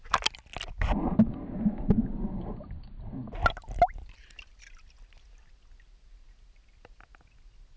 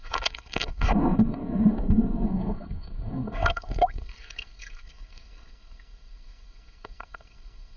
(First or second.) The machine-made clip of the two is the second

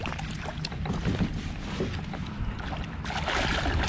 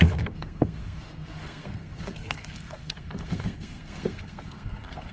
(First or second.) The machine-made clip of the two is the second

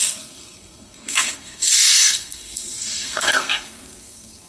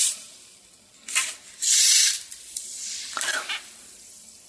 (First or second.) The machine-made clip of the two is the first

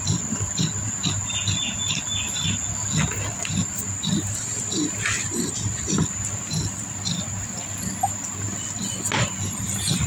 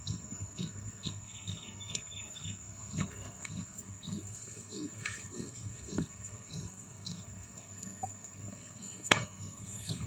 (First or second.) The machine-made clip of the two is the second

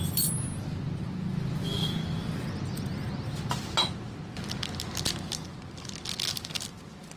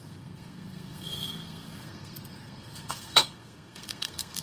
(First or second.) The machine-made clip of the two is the second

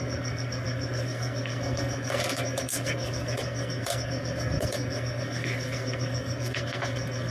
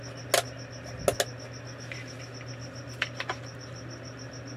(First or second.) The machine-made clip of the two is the first